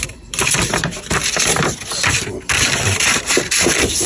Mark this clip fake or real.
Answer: fake